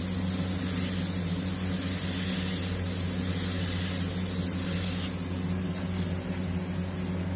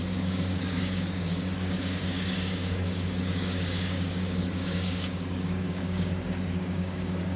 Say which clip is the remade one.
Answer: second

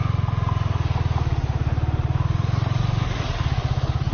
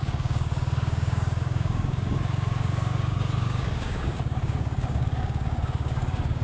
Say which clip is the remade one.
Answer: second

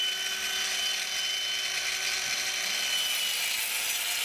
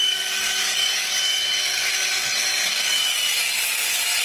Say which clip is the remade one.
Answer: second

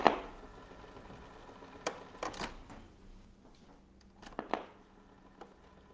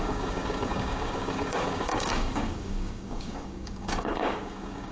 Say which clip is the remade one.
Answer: second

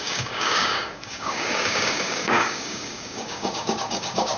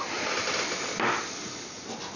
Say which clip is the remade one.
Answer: first